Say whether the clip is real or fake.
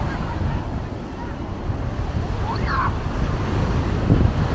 real